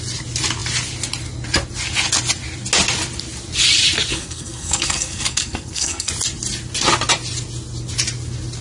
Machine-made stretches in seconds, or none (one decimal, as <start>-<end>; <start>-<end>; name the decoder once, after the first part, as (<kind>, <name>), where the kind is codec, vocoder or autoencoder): 4.1-6.1 (codec, SNAC)